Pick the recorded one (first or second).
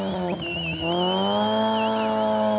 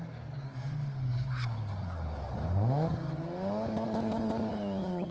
first